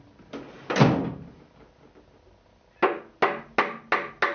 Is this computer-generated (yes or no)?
no